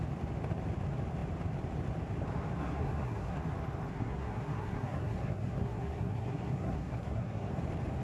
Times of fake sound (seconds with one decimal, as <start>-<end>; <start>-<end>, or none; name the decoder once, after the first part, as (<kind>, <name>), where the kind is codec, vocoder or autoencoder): 2.6-3.4 (codec, SNAC); 3.9-7.5